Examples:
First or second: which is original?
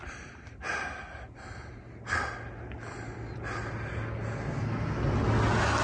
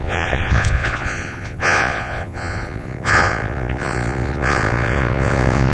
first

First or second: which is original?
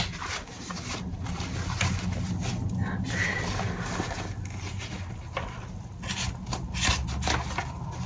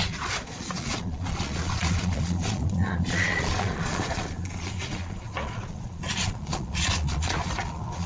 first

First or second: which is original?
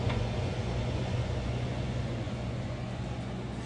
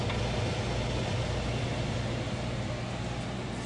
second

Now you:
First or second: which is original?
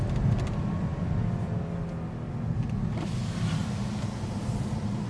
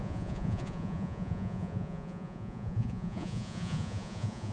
first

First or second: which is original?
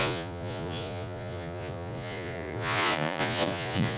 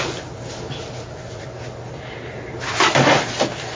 second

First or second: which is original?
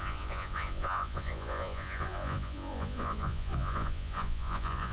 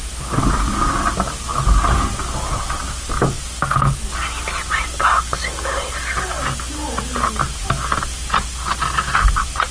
second